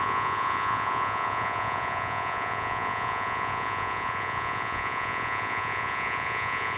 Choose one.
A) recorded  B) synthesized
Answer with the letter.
B